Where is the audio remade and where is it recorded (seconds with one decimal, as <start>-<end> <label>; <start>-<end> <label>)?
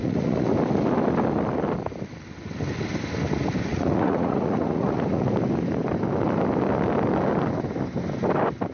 0.0-0.5 remade; 0.5-3.7 recorded; 3.7-5.3 remade; 5.3-8.7 recorded